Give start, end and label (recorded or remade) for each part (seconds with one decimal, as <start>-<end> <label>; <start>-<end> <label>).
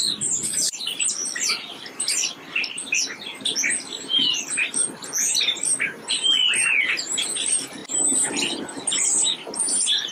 0.0-2.8 remade; 2.8-6.8 recorded; 6.8-7.8 remade; 7.8-8.3 recorded; 8.3-10.1 remade